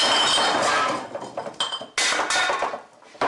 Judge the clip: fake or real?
real